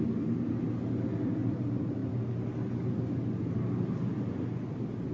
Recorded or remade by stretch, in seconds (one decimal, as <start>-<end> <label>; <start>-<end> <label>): 0.0-5.1 recorded